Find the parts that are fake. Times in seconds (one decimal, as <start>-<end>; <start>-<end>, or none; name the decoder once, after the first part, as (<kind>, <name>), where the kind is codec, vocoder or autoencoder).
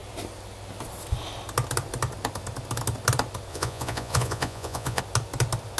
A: 3.5-5.0 (vocoder, Vocos)